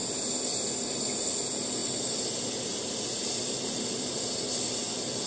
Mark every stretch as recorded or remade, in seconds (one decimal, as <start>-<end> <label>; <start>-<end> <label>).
0.0-1.8 recorded; 1.8-5.3 remade